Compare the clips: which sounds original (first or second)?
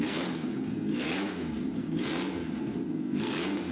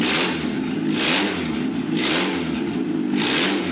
second